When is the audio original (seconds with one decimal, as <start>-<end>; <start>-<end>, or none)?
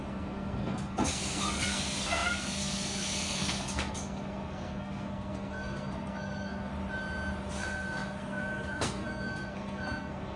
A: 6.7-7.5